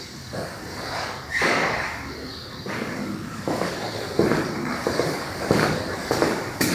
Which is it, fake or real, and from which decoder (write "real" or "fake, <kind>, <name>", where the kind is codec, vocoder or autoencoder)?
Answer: fake, codec, DAC